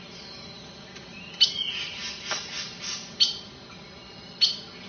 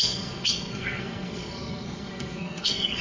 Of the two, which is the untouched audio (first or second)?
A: first